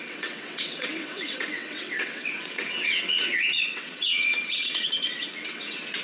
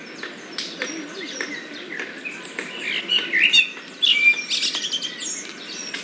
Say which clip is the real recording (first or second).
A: second